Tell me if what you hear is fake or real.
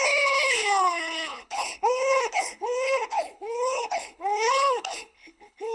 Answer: fake